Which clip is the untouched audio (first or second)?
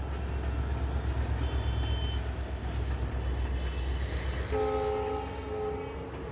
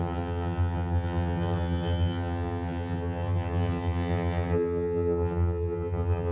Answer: first